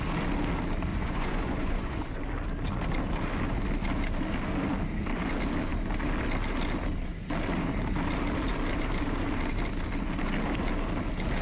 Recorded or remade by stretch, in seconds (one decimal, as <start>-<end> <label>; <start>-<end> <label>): 0.0-0.9 recorded; 0.9-2.2 remade; 2.2-11.4 recorded